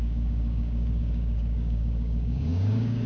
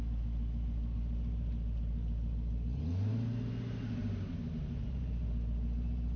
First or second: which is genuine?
second